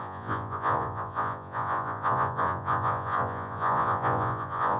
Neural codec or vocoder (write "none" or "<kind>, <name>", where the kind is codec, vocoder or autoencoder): vocoder, Vocos